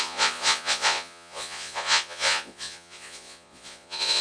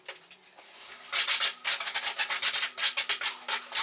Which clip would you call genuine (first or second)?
second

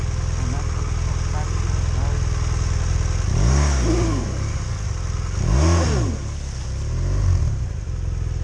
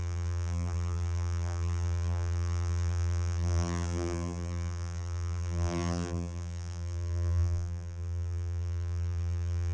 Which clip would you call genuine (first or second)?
first